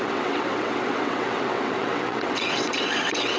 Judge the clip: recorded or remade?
remade